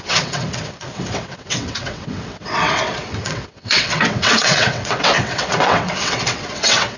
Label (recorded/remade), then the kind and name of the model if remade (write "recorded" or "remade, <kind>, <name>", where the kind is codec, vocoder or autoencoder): remade, vocoder, WaveNeXt